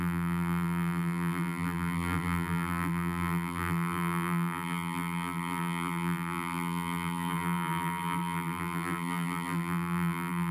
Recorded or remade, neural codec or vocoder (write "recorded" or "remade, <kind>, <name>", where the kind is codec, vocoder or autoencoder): remade, vocoder, BigVGAN v2